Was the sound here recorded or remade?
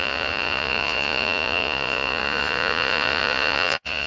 remade